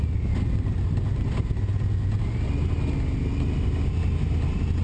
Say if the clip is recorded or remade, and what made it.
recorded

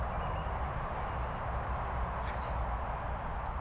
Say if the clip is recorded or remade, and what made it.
recorded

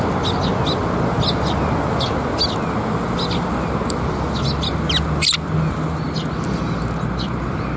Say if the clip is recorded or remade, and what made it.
recorded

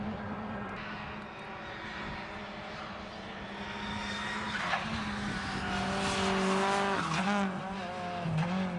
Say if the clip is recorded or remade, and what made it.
recorded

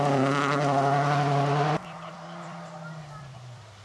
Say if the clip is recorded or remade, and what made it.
remade, vocoder, BigVGAN v2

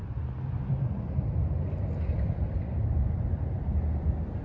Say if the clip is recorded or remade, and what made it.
recorded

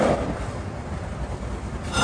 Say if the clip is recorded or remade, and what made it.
remade, vocoder, BigVGAN v2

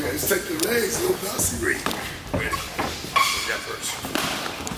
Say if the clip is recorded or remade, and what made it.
recorded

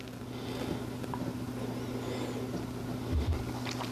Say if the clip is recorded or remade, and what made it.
recorded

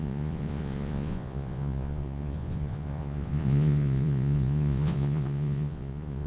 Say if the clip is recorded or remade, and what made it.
remade, vocoder, Vocos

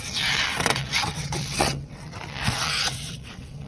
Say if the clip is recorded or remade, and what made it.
remade, vocoder, WaveNeXt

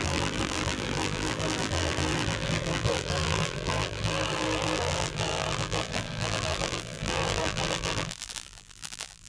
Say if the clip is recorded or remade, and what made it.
remade, vocoder, BigVGAN v2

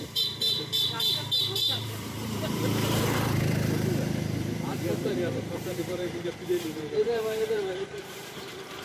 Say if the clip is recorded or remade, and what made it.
remade, vocoder, BigVGAN v2